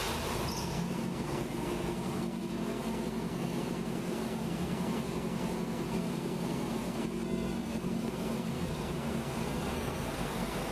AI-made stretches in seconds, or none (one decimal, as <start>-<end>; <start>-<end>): 0.6-10.7